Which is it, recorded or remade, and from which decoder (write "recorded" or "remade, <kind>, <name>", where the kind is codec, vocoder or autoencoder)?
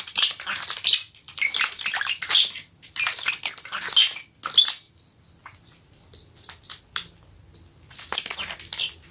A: recorded